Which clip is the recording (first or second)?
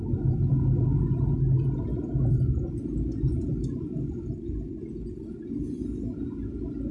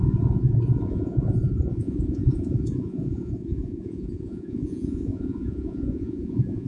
first